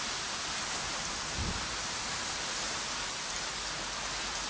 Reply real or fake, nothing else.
real